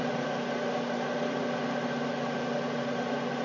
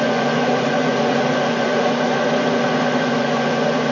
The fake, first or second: second